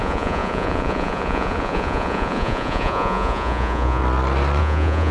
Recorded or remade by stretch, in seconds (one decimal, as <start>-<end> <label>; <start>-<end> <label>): 0.0-4.0 remade; 4.0-4.6 recorded; 4.6-5.1 remade